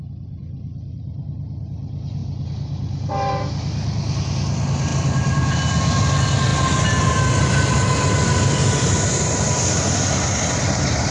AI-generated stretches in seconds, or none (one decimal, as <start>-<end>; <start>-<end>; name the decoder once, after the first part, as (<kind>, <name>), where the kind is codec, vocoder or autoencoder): 0.4-1.3 (vocoder, BigVGAN v2); 2.2-3.3